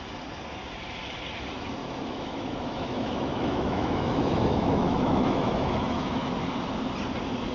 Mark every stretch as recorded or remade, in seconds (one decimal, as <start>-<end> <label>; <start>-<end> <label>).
0.0-1.8 recorded; 1.8-6.3 remade; 6.3-7.5 recorded